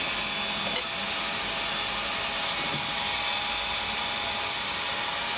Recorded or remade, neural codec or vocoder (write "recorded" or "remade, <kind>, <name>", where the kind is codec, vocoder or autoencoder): recorded